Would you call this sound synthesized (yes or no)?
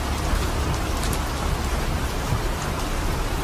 no